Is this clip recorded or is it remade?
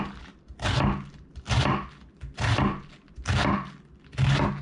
recorded